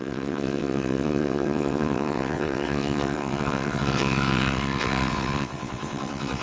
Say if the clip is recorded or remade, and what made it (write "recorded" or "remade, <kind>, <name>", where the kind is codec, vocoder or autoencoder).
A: remade, vocoder, WaveNeXt